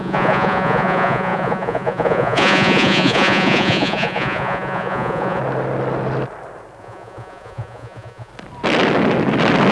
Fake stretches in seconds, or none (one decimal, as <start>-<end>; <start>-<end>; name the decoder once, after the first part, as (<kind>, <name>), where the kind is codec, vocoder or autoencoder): 0.0-5.4 (vocoder, Vocos); 6.8-8.3